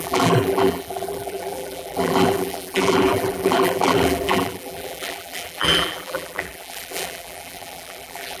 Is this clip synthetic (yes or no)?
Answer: yes